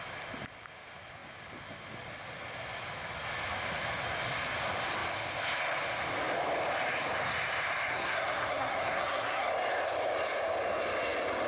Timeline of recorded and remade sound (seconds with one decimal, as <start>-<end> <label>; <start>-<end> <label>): 0.0-7.9 recorded; 7.9-9.5 remade; 9.5-11.5 recorded